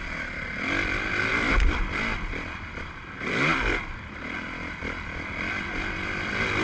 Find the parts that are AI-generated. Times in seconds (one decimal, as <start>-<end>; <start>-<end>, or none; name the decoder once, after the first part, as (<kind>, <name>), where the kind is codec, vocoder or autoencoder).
none